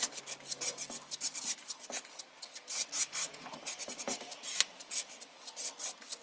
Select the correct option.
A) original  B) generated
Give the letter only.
A